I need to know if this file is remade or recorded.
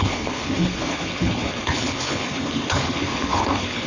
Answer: remade